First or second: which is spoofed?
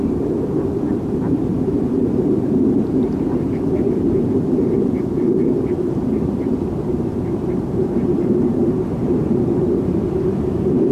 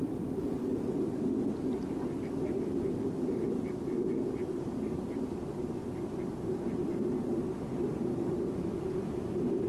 first